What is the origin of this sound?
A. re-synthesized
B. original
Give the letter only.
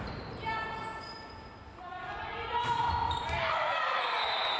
B